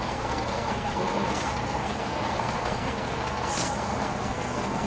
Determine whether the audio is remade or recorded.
remade